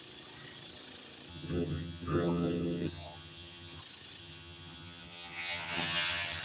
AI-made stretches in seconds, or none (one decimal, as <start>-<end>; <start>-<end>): 1.3-3.8; 4.2-6.4